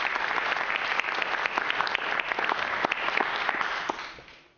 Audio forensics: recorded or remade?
recorded